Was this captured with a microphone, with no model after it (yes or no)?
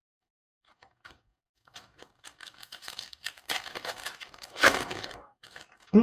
no